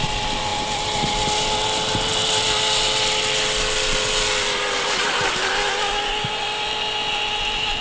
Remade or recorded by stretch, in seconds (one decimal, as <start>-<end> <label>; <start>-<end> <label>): 0.0-7.8 recorded